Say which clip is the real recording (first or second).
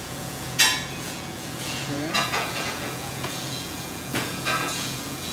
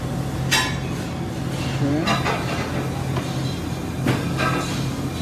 second